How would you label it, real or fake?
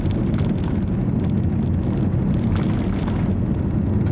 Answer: real